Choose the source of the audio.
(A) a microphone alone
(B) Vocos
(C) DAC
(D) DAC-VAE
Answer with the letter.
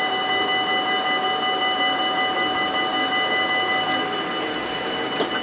A